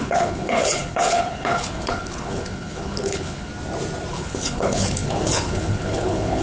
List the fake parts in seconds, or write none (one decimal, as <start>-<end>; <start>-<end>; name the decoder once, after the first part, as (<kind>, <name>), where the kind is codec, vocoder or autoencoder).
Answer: 0.0-3.5 (codec, HILCodec); 4.1-6.4